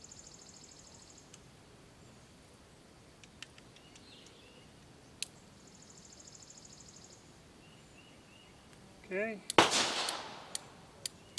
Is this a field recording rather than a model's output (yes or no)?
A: yes